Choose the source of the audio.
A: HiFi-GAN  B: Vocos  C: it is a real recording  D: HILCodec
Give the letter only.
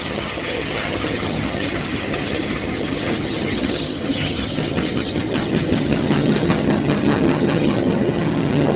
A